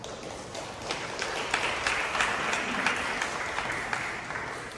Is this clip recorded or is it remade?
recorded